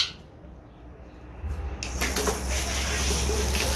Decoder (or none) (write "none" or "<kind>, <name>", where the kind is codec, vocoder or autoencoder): none